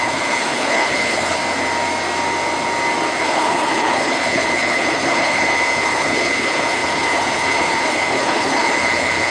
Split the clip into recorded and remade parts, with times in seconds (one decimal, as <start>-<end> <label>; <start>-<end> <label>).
0.0-1.4 remade; 1.4-3.2 recorded; 3.2-9.3 remade